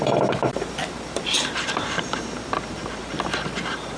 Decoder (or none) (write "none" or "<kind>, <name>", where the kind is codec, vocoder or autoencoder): vocoder, BigVGAN v2